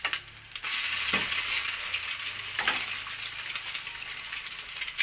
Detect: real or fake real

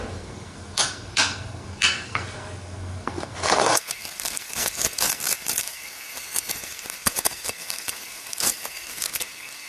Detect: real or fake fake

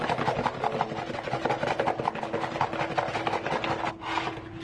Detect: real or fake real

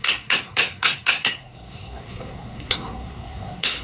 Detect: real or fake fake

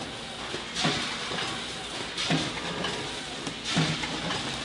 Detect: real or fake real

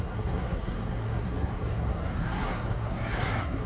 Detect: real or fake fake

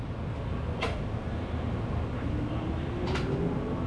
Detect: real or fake real